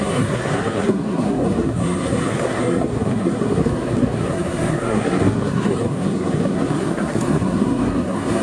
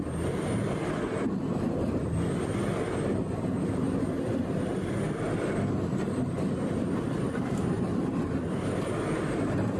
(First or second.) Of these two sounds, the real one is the second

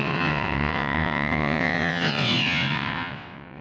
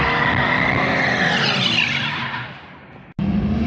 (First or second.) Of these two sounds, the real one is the second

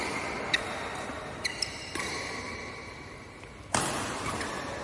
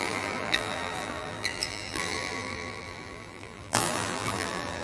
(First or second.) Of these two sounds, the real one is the first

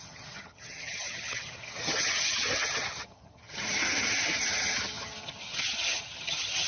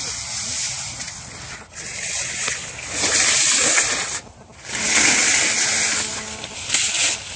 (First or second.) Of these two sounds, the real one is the second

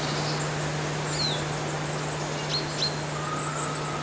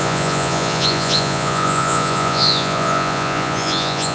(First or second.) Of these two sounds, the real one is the first